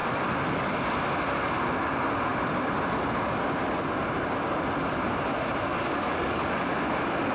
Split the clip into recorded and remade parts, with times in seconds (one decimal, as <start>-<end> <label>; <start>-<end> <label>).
0.0-0.7 remade; 0.7-5.7 recorded; 5.7-6.7 remade; 6.7-7.3 recorded